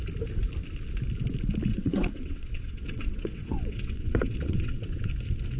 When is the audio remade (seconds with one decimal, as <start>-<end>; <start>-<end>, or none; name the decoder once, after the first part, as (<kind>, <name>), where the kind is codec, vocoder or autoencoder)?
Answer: 1.7-5.1 (vocoder, WaveNeXt)